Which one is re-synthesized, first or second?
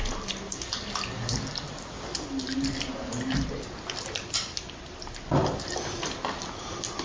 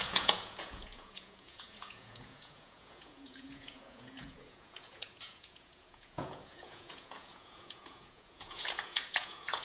second